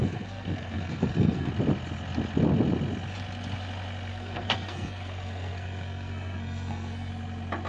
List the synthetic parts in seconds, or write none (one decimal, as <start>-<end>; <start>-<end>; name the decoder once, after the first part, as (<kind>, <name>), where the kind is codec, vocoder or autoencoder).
0.0-1.5 (codec, SNAC); 4.1-7.1